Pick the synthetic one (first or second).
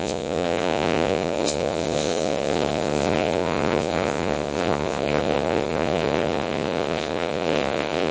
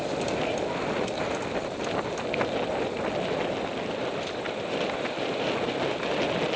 first